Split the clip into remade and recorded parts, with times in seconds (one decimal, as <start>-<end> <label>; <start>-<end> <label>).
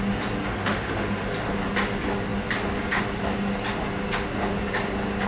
0.0-0.5 recorded; 0.5-1.3 remade; 1.3-5.3 recorded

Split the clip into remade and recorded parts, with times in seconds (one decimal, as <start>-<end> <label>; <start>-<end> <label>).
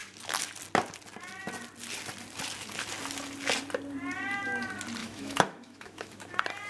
0.0-5.0 recorded; 5.0-6.3 remade; 6.3-6.7 recorded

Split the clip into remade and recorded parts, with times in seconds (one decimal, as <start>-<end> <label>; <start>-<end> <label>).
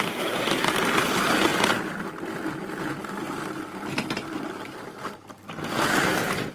0.0-6.5 recorded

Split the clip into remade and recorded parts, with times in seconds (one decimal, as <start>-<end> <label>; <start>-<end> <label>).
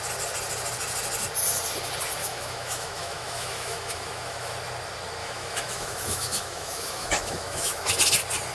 0.0-2.2 recorded; 2.2-4.5 remade; 4.5-5.2 recorded; 5.2-7.9 remade; 7.9-8.5 recorded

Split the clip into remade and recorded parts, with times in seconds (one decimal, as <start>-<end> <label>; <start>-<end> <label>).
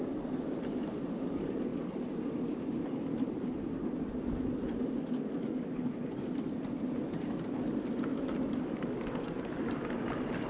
0.0-10.5 recorded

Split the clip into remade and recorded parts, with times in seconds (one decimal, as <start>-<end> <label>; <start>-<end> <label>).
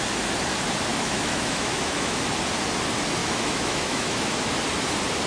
0.0-0.9 recorded; 0.9-2.2 remade; 2.2-3.2 recorded; 3.2-4.4 remade; 4.4-5.3 recorded